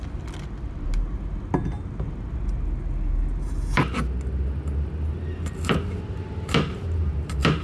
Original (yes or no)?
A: yes